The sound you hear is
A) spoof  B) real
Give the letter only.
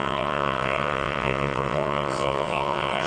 A